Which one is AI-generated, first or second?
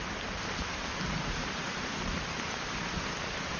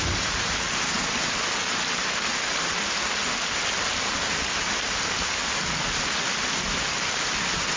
first